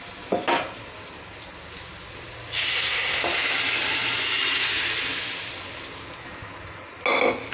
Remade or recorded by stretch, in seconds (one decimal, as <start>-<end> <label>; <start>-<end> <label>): 0.0-2.7 recorded; 2.7-3.2 remade; 3.2-7.5 recorded